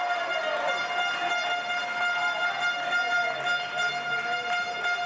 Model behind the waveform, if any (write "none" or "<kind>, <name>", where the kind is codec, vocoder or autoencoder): none